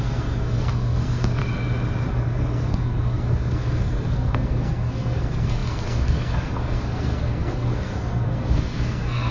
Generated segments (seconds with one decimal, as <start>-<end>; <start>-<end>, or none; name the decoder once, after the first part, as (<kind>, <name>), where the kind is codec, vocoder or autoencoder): 0.0-1.4 (codec, SNAC); 2.1-9.3